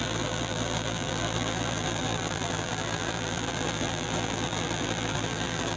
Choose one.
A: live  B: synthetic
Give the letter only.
B